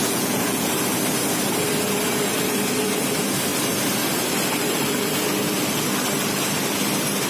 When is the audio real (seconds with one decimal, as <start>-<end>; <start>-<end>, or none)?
0.7-7.3